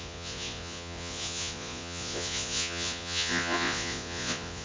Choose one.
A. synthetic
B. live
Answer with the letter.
A